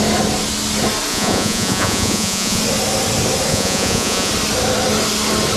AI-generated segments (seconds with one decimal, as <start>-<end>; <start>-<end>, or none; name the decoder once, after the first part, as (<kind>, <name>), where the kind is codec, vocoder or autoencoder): 1.1-2.6 (vocoder, Vocos); 3.5-4.3